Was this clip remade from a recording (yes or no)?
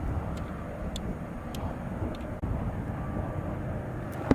no